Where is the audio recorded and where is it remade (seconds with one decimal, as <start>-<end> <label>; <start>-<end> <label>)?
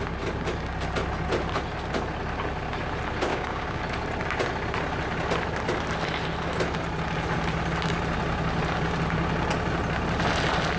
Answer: 0.0-3.3 recorded; 3.3-3.8 remade; 3.8-10.8 recorded